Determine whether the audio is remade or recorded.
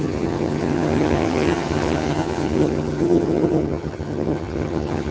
remade